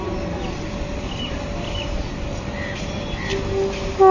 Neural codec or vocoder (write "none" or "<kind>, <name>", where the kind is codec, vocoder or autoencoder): none